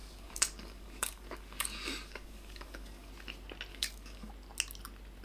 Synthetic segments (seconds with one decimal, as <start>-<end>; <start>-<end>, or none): 0.0-3.1; 3.7-4.3